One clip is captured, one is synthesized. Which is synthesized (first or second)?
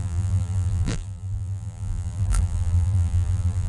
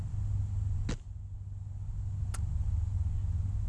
first